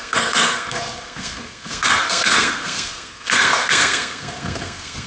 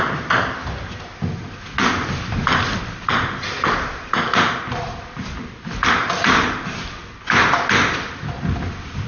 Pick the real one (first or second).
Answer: second